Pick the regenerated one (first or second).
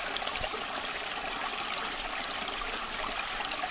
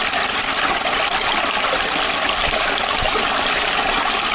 first